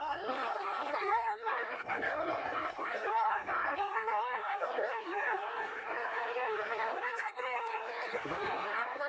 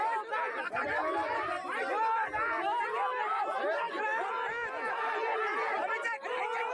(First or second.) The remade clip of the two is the first